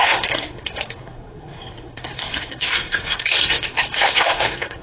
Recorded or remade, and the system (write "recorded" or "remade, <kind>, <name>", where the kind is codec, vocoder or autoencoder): remade, codec, SNAC